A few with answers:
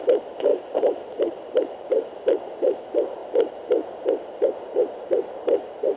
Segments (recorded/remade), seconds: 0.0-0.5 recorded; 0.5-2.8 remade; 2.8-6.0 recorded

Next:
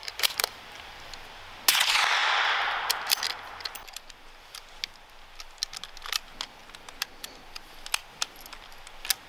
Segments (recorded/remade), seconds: 0.0-1.1 remade; 1.1-9.3 recorded

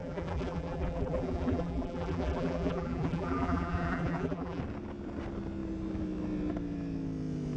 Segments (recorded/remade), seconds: 0.0-4.6 remade; 4.6-7.6 recorded

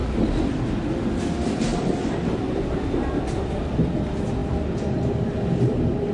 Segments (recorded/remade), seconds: 0.0-0.6 remade; 0.6-1.7 recorded; 1.7-2.8 remade; 2.8-6.1 recorded

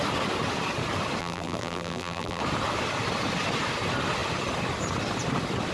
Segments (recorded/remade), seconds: 0.0-1.2 recorded; 1.2-2.4 remade; 2.4-5.7 recorded

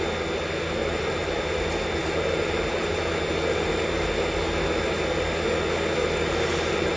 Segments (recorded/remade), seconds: 0.0-0.8 recorded; 0.8-1.4 remade; 1.4-2.0 recorded; 2.0-3.0 remade; 3.0-6.0 recorded; 6.0-7.0 remade

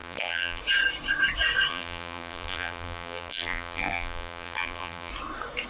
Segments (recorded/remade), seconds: 0.0-0.6 remade; 0.6-1.7 recorded; 1.7-5.1 remade; 5.1-5.7 recorded